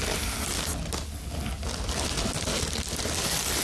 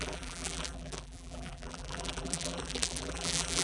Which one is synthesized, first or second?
second